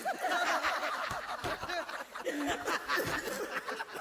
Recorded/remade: recorded